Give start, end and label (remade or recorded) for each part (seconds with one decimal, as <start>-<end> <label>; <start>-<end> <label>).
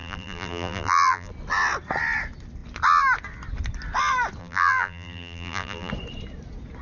0.0-1.3 remade; 1.3-4.4 recorded; 4.4-5.9 remade; 5.9-6.8 recorded